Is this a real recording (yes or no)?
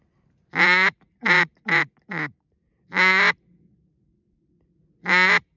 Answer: yes